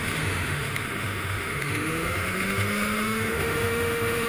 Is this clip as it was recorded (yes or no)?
no